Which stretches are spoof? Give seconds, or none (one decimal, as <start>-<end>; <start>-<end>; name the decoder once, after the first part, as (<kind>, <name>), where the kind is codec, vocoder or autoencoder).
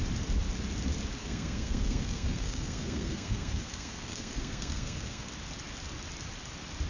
1.2-5.3 (codec, SNAC)